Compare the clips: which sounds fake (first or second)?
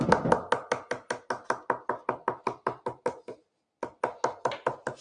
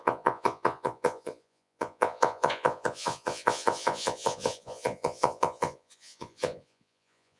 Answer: second